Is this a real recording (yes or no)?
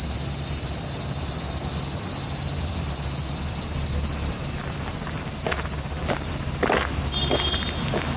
yes